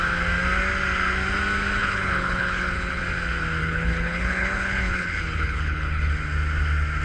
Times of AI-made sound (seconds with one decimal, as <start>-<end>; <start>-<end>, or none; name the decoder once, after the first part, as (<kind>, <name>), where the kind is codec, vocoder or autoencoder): 1.8-3.0 (codec, HILCodec); 3.6-6.1